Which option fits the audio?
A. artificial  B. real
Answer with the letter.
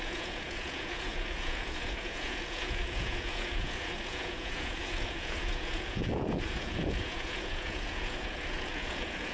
A